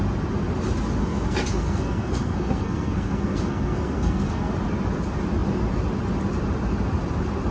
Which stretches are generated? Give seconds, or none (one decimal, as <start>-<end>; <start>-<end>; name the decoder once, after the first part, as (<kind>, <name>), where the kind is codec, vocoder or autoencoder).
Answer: 1.0-4.5 (codec, SNAC)